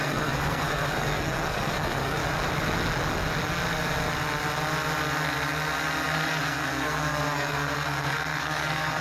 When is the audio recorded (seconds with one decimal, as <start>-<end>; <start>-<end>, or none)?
2.2-6.4